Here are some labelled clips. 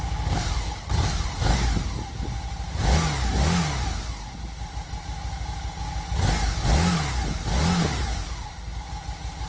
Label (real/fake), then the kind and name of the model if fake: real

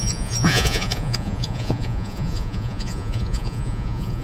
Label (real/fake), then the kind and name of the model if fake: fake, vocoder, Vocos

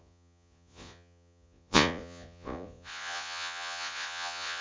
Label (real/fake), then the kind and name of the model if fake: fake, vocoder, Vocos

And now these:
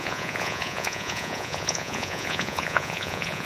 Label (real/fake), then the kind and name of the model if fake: fake, vocoder, Vocos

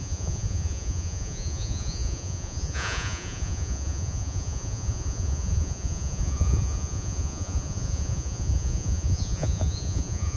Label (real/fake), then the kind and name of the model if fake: fake, vocoder, Vocos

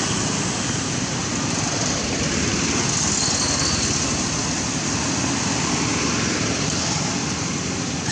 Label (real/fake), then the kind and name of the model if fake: real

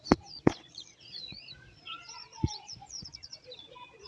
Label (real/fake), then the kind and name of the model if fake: fake, vocoder, Vocos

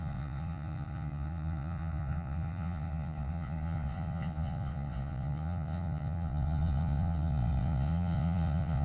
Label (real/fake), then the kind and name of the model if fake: fake, vocoder, Vocos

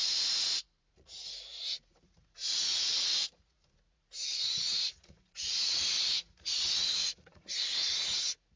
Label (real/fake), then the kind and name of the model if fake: fake, vocoder, Vocos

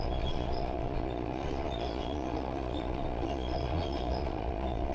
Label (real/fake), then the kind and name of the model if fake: fake, vocoder, Vocos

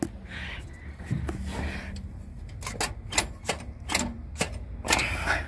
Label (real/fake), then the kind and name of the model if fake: real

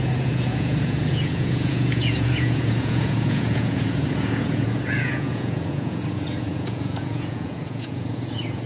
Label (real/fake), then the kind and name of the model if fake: fake, vocoder, Vocos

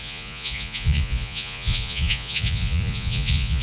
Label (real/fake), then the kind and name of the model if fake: fake, vocoder, Vocos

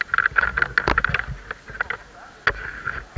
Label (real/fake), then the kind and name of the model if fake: real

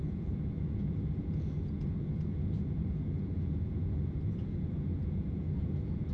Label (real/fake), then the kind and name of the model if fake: fake, vocoder, Vocos